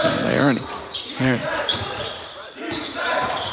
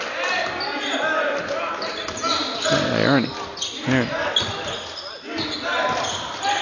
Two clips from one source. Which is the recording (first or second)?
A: second